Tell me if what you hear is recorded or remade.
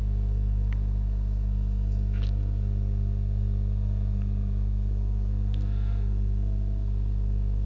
remade